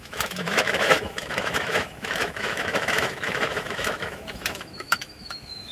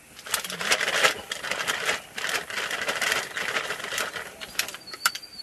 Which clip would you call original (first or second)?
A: second